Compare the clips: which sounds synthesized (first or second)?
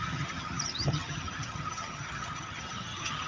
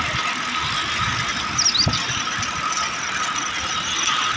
first